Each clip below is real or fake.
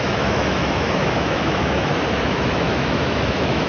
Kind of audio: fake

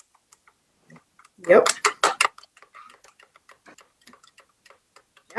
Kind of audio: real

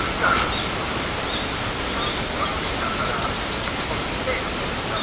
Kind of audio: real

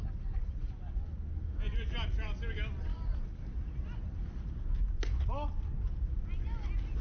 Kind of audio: real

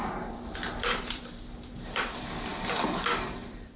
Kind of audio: fake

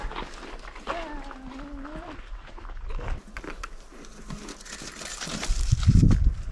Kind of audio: real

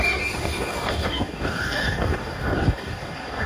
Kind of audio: fake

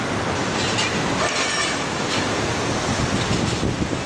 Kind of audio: real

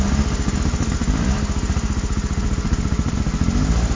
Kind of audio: real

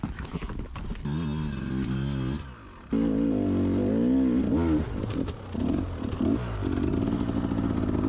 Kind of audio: real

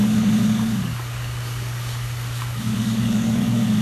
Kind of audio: fake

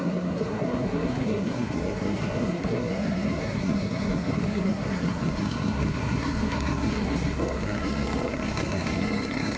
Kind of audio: fake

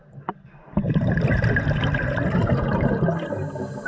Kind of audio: real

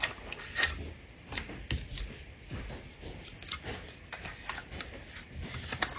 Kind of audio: real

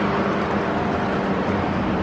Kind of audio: real